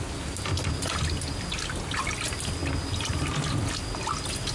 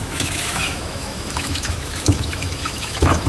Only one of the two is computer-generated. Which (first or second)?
second